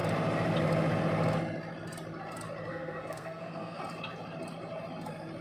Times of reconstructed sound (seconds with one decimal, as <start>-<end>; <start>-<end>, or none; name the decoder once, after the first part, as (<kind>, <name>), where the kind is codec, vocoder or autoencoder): 2.7-3.8 (codec, SNAC)